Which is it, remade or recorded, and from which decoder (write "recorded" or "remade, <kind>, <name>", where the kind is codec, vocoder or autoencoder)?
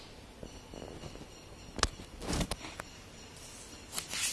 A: recorded